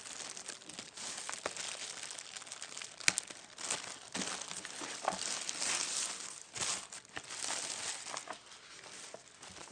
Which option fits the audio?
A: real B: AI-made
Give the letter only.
A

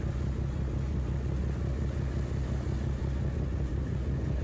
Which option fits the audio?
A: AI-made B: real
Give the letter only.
B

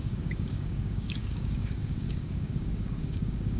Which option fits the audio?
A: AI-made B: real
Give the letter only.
A